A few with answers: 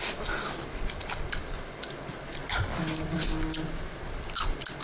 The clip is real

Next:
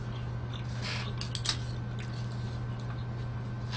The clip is real